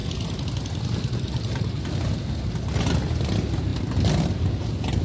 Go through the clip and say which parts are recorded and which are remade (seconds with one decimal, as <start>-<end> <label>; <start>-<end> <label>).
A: 0.0-5.0 recorded

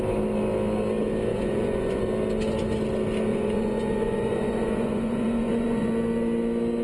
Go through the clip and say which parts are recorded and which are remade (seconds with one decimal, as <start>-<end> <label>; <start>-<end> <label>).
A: 0.0-1.3 recorded; 1.3-2.0 remade; 2.0-3.3 recorded; 3.3-5.9 remade; 5.9-6.8 recorded

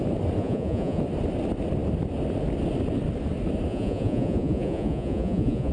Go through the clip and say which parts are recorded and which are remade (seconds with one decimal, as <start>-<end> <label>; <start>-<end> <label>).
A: 0.0-0.4 recorded; 0.4-1.0 remade; 1.0-3.7 recorded; 3.7-5.7 remade

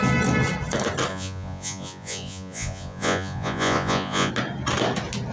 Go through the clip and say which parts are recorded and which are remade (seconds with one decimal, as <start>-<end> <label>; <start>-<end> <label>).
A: 0.0-1.1 recorded; 1.1-4.3 remade; 4.3-5.3 recorded

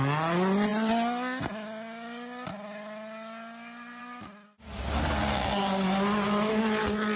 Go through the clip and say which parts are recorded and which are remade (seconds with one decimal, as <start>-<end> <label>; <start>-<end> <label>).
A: 0.0-7.2 recorded

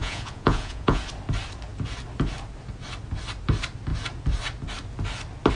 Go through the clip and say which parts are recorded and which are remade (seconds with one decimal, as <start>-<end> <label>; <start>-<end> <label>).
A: 0.0-1.0 remade; 1.0-5.5 recorded